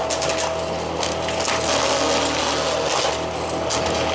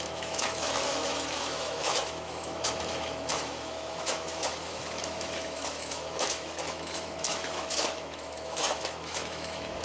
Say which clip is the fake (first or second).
second